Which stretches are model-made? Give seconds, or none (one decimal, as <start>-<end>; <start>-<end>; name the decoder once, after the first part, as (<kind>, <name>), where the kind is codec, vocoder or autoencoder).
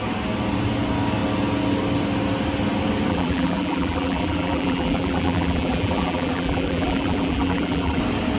3.1-8.0 (vocoder, BigVGAN v2)